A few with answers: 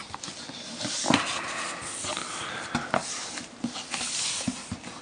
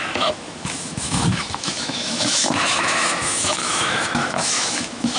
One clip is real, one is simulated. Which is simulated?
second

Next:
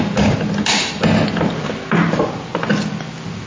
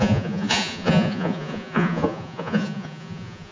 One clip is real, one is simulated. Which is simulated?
second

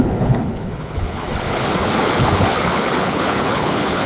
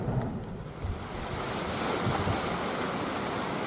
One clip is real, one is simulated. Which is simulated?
first